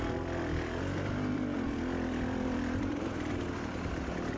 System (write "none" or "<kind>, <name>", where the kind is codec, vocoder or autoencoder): vocoder, BigVGAN v2